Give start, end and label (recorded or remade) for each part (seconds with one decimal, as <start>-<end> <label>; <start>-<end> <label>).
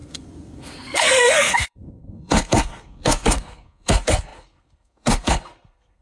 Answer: 0.0-6.0 remade